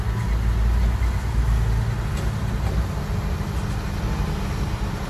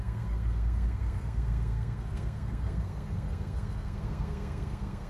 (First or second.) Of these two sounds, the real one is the first